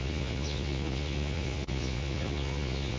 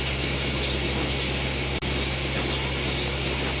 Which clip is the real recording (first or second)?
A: second